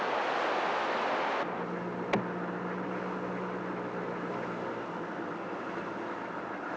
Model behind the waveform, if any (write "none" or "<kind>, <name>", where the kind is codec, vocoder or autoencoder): none